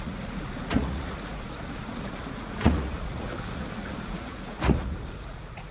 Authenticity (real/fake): fake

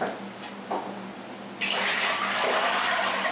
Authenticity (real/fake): real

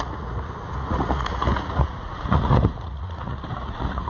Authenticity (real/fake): fake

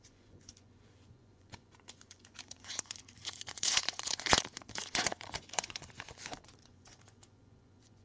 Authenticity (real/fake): fake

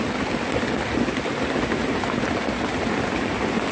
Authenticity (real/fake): real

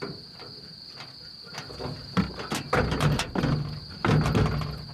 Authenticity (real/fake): real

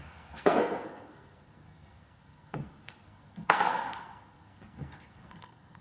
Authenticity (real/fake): fake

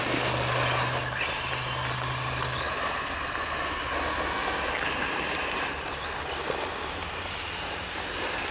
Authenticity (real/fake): real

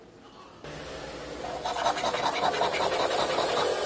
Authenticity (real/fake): real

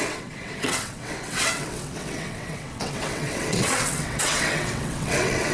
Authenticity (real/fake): fake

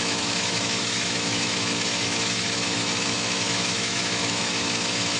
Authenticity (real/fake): fake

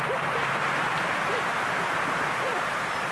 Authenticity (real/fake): real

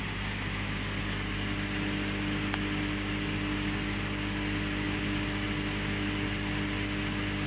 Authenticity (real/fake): real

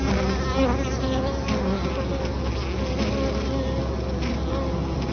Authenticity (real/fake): real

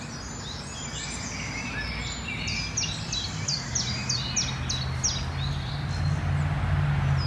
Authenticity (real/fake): real